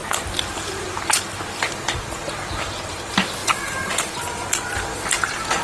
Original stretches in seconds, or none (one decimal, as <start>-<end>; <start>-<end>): 1.2-3.4; 4.1-5.6